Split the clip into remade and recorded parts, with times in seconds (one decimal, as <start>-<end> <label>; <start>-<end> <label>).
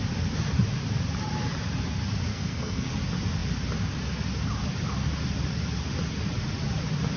0.0-2.3 recorded; 2.3-2.9 remade; 2.9-7.2 recorded